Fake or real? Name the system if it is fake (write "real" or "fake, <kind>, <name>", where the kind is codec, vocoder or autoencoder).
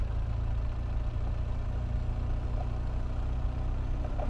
real